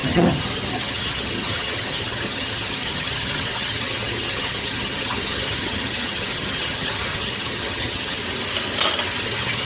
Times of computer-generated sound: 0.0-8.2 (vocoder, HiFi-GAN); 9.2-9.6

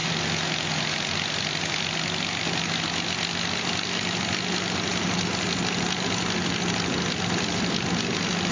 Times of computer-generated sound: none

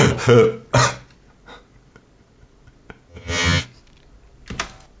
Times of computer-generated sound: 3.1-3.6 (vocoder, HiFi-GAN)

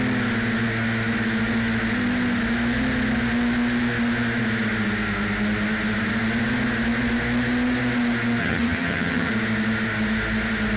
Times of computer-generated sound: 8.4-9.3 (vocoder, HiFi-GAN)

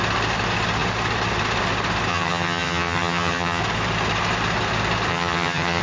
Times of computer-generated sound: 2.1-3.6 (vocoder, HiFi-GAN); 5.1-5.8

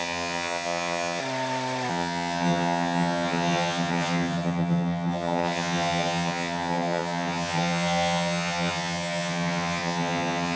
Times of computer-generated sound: 0.0-1.2 (vocoder, HiFi-GAN); 1.9-10.6

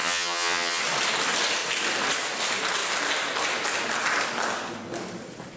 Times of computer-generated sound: 0.0-0.8 (vocoder, HiFi-GAN)